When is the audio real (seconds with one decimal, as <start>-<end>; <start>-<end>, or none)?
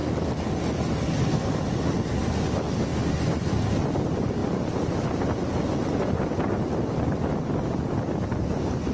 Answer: 0.0-1.5; 2.9-3.7